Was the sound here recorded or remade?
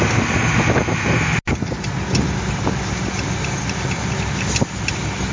recorded